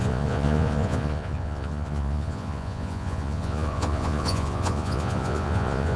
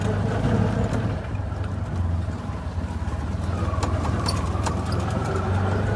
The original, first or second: second